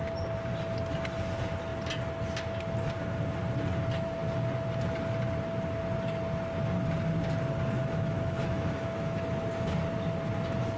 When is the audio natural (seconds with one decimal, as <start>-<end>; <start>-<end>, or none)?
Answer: 0.0-7.8; 9.2-10.8